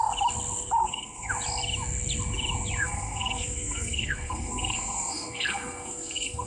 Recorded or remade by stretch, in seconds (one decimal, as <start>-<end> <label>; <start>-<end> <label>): 0.0-0.8 recorded; 0.8-1.3 remade; 1.3-2.8 recorded; 2.8-6.5 remade